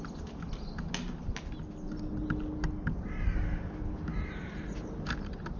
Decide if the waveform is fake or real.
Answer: real